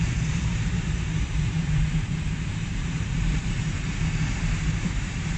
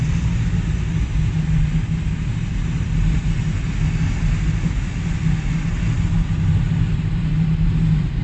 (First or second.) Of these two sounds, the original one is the second